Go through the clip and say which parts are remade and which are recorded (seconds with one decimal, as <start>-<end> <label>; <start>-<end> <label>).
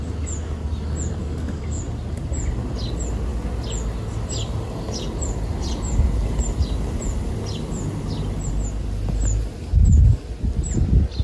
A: 0.0-1.2 recorded; 1.2-1.8 remade; 1.8-11.2 recorded